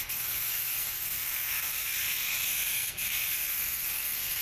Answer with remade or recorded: remade